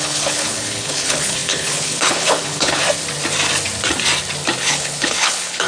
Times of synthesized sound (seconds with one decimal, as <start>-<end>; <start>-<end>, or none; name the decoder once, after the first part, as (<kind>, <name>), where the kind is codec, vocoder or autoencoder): 0.0-2.8 (codec, HILCodec); 4.6-5.7